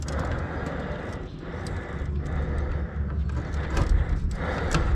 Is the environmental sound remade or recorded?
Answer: recorded